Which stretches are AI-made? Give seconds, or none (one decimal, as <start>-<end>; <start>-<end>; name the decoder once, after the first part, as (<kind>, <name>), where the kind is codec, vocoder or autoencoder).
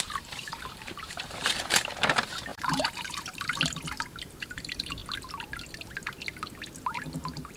0.0-5.0 (vocoder, BigVGAN v2); 6.8-7.6